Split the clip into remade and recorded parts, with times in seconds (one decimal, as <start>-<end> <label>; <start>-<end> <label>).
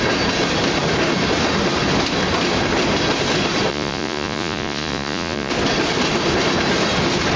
0.0-3.7 recorded; 3.7-5.5 remade; 5.5-7.4 recorded